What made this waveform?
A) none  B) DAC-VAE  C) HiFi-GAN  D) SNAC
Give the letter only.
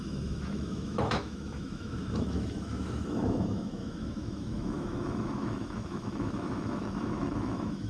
B